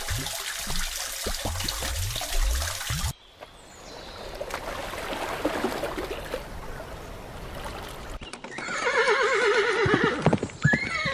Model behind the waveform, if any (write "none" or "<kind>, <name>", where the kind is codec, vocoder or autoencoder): none